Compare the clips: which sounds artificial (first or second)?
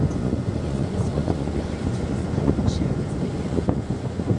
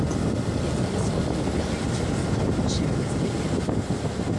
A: first